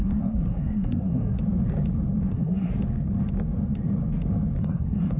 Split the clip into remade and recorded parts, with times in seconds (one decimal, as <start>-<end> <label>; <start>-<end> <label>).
0.0-1.4 remade; 1.4-2.3 recorded; 2.3-2.7 remade; 2.7-4.6 recorded; 4.6-5.2 remade

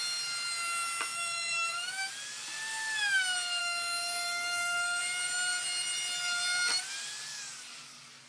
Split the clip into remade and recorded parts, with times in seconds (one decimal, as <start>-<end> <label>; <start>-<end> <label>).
0.0-1.1 recorded; 1.1-2.1 remade; 2.1-3.6 recorded; 3.6-5.0 remade; 5.0-8.3 recorded

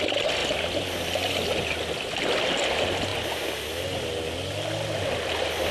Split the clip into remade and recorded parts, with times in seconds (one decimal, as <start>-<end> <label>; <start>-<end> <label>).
0.0-5.7 recorded

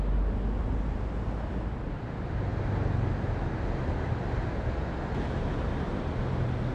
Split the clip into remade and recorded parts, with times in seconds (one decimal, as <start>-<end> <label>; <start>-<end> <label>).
0.0-6.7 recorded

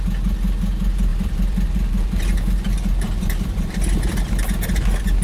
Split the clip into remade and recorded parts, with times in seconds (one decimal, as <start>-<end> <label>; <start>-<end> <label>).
0.0-1.1 recorded; 1.1-2.3 remade; 2.3-2.7 recorded; 2.7-3.7 remade; 3.7-5.2 recorded

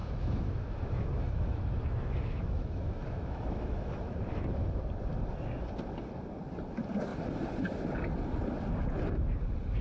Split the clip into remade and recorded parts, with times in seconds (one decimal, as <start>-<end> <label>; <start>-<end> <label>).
0.0-4.8 remade; 4.8-9.8 recorded

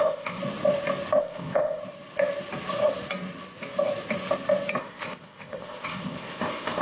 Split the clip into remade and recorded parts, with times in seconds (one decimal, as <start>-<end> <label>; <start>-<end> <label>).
0.0-0.4 remade; 0.4-1.2 recorded; 1.2-1.8 remade; 1.8-4.8 recorded; 4.8-6.8 remade